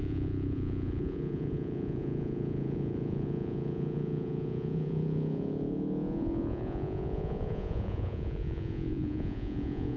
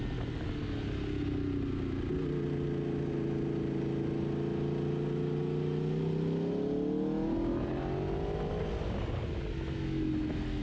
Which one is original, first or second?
second